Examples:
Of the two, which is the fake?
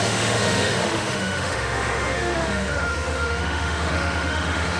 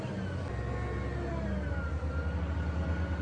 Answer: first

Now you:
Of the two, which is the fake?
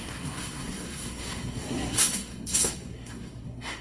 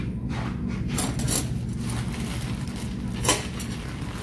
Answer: first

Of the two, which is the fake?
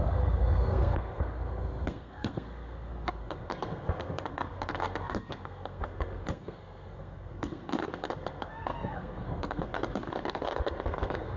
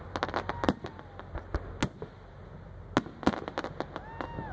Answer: first